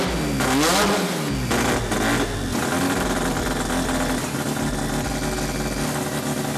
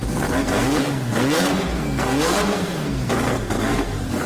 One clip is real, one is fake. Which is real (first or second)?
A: first